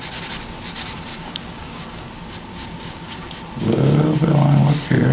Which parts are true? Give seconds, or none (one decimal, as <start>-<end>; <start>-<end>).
0.0-1.1; 2.1-2.5; 3.3-5.1